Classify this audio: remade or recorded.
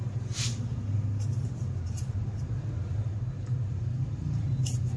recorded